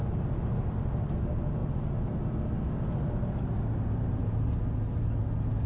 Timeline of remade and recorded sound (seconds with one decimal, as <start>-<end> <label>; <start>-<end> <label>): 0.0-5.7 recorded